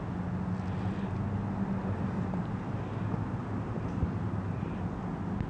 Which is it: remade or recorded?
recorded